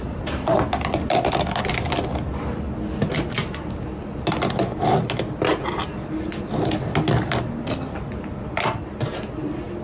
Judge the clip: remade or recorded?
recorded